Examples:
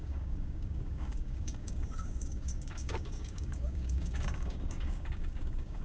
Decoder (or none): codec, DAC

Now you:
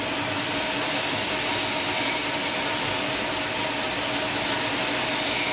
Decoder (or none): none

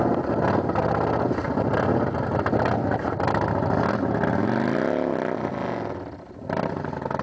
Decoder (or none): none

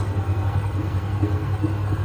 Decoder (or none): codec, SNAC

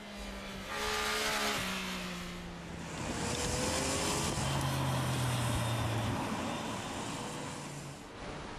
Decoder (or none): none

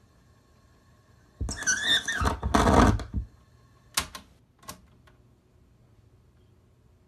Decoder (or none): none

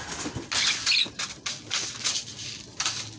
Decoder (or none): none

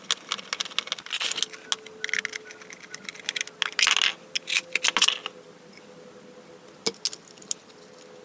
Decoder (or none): none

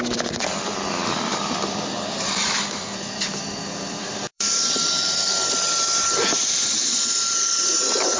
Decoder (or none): vocoder, BigVGAN v2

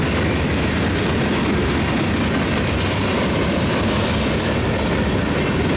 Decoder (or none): none